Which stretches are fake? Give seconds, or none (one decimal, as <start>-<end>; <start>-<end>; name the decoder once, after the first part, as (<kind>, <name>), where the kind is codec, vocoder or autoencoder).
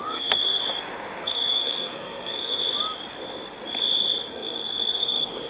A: 0.0-0.6 (codec, SNAC); 1.2-2.6; 4.3-5.5